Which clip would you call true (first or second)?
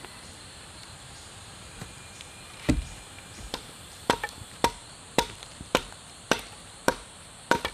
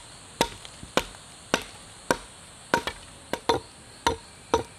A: second